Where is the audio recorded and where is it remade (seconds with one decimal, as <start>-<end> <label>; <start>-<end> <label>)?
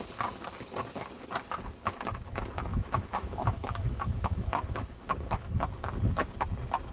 0.0-2.7 recorded; 2.7-5.6 remade; 5.6-6.9 recorded